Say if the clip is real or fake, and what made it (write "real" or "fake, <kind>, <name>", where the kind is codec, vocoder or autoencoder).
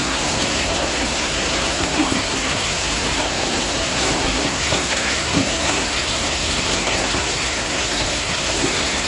fake, codec, SNAC